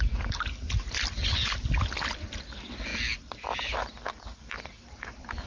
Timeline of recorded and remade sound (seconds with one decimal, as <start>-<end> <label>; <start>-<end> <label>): 0.0-4.3 recorded; 4.3-5.5 remade